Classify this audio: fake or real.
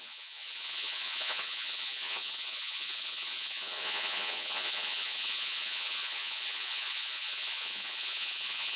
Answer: fake